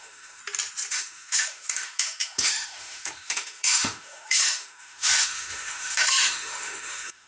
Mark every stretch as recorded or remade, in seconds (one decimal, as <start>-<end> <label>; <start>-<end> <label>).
0.0-0.4 remade; 0.4-0.9 recorded; 0.9-7.3 remade